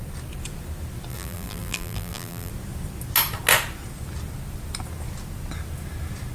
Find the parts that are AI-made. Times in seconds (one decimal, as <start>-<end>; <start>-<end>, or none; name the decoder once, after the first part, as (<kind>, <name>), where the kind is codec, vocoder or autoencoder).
1.1-2.5 (vocoder, BigVGAN v2)